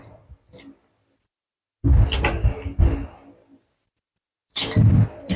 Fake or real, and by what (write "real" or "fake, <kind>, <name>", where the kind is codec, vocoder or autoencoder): real